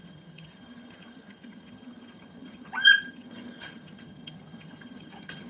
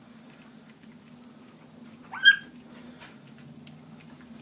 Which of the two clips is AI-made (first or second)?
first